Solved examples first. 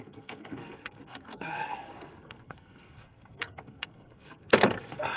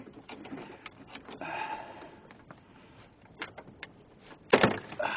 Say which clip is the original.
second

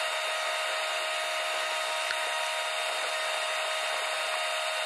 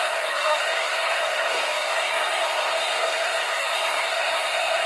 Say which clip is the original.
first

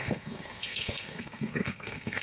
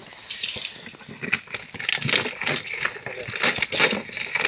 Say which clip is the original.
second